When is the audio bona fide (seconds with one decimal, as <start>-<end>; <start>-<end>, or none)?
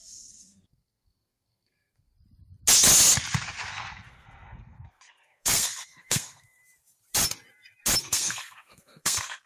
2.1-3.7; 6.6-8.0